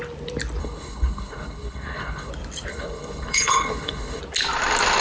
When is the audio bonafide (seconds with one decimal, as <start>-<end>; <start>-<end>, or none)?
0.0-0.6; 2.3-2.7; 4.2-5.0